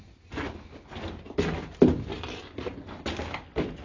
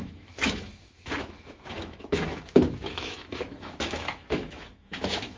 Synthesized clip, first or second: second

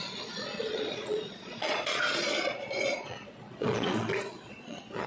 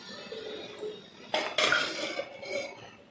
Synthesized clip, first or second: first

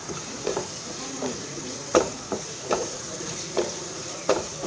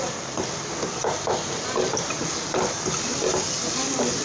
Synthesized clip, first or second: first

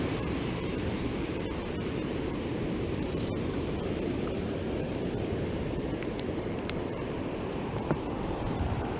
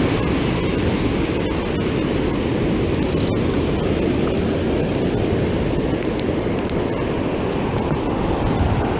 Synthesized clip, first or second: first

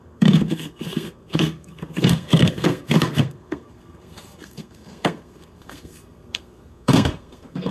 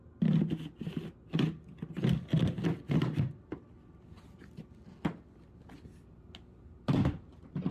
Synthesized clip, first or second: first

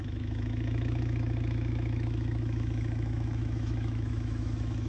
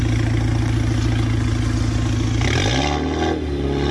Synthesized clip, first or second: first